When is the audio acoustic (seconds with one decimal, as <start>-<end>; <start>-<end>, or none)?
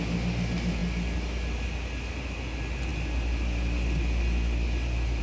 0.0-5.2